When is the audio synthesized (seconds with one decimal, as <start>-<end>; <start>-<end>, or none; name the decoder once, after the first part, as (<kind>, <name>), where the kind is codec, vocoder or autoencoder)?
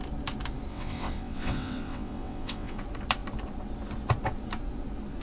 0.7-2.8 (vocoder, WaveNeXt)